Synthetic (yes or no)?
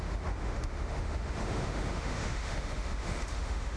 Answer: yes